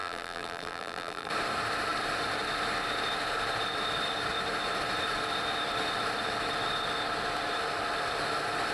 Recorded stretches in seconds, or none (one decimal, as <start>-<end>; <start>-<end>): 1.3-8.7